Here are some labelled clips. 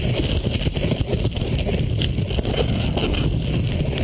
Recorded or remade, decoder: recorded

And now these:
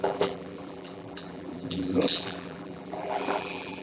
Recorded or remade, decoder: remade, vocoder, BigVGAN v2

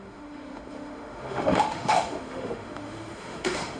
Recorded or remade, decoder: remade, autoencoder, DAC-VAE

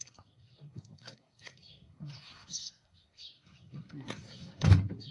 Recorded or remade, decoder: remade, codec, SNAC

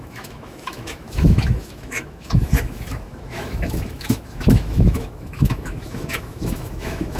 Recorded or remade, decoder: remade, autoencoder, DAC-VAE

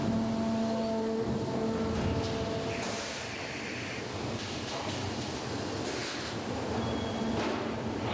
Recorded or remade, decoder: recorded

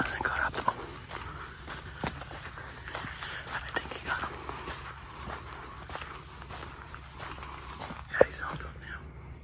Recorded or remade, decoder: recorded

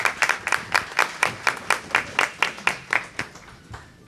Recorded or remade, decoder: recorded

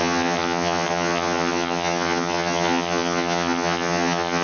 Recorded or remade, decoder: remade, vocoder, HiFi-GAN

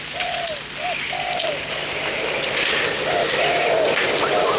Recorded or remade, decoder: recorded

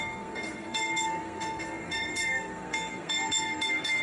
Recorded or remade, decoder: remade, codec, SNAC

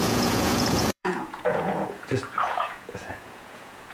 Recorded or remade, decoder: remade, vocoder, Vocos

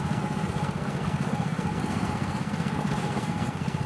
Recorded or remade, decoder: remade, codec, SNAC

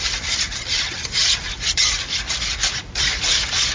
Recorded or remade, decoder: recorded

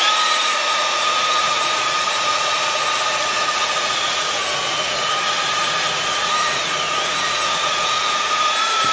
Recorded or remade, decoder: remade, vocoder, Vocos